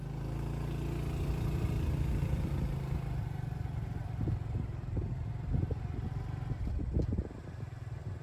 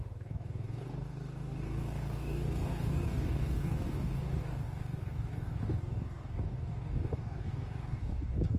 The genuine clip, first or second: first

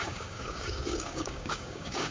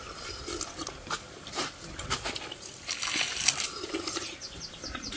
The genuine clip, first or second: second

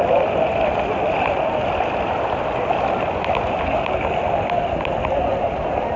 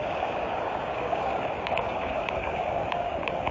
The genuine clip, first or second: first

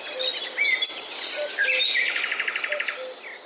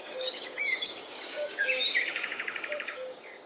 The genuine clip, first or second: first